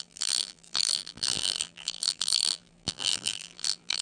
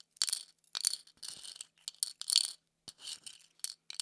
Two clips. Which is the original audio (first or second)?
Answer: second